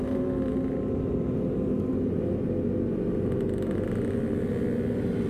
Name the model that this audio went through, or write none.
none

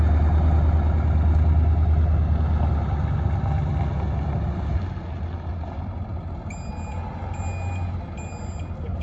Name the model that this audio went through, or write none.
none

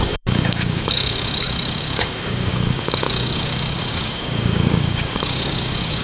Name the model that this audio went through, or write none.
codec, DAC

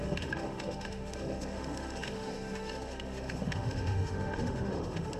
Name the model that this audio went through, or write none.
autoencoder, DAC-VAE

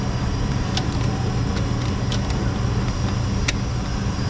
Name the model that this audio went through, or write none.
none